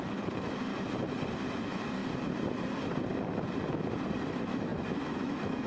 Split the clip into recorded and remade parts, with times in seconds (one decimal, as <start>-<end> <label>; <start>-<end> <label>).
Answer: 0.0-0.7 remade; 0.7-1.5 recorded; 1.5-2.0 remade; 2.0-4.3 recorded; 4.3-5.7 remade